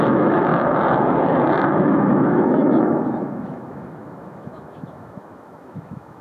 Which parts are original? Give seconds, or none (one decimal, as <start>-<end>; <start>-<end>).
0.5-1.7